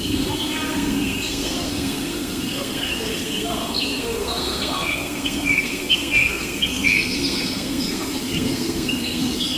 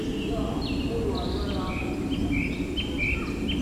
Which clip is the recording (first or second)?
second